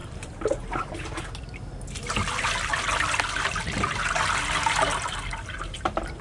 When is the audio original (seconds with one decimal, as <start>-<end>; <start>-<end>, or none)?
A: 0.9-6.2